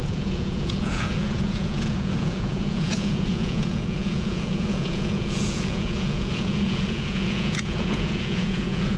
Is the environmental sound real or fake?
fake